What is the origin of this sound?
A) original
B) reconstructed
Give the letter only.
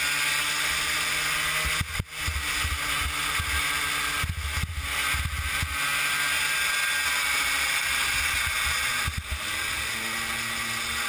A